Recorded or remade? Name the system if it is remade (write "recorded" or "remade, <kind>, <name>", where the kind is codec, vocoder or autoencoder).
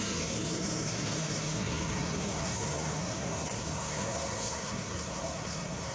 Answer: remade, codec, SNAC